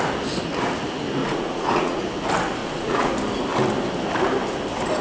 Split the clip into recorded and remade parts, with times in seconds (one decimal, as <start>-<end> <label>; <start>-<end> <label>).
0.0-1.2 recorded; 1.2-2.0 remade; 2.0-2.6 recorded; 2.6-3.1 remade; 3.1-5.0 recorded